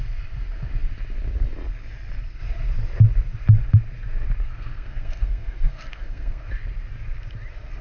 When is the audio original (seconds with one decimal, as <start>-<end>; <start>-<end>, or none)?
0.0-4.5; 6.5-7.8